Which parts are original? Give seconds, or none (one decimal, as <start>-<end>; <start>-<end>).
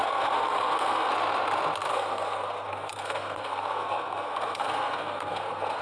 1.1-1.9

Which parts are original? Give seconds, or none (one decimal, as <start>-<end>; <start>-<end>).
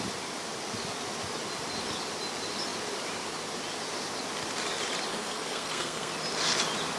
0.0-5.1; 6.1-7.0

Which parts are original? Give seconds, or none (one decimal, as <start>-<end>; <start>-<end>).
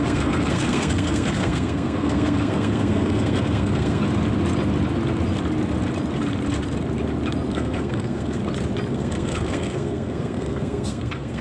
4.0-7.5; 8.4-8.9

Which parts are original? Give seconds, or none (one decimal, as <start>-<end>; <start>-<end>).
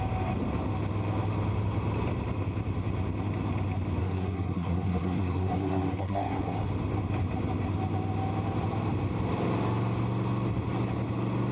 0.0-4.0; 6.7-11.5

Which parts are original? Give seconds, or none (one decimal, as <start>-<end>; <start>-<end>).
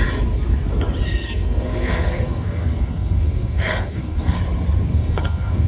0.0-1.0; 4.4-4.9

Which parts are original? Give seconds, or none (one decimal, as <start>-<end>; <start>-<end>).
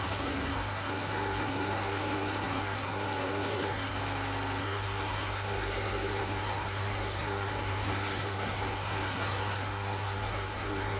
4.0-4.6